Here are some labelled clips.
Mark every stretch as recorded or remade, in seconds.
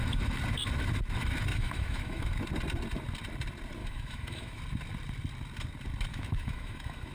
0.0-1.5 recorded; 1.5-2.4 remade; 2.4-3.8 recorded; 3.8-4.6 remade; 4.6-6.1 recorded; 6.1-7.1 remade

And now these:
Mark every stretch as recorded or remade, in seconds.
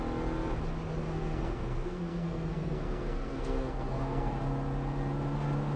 0.0-1.0 recorded; 1.0-4.3 remade; 4.3-5.8 recorded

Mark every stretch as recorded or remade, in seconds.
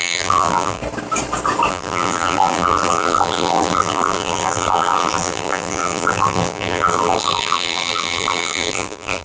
0.0-0.8 remade; 0.8-1.7 recorded; 1.7-9.2 remade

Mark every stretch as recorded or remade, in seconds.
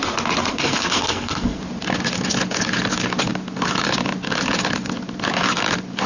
0.0-0.5 recorded; 0.5-1.6 remade; 1.6-6.1 recorded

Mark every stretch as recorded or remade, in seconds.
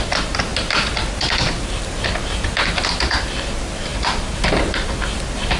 0.0-5.6 recorded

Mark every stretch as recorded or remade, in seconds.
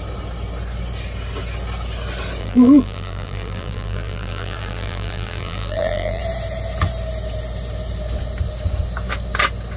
0.0-2.4 recorded; 2.4-6.2 remade; 6.2-9.8 recorded